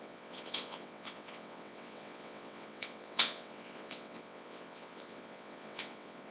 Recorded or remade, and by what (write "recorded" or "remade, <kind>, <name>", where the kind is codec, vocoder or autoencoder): remade, vocoder, WaveNeXt